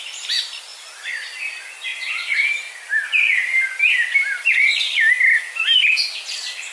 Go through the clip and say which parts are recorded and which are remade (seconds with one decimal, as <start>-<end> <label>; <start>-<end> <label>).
0.0-3.4 recorded; 3.4-5.0 remade; 5.0-6.7 recorded